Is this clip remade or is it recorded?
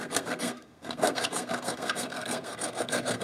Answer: remade